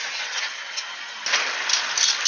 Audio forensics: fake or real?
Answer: real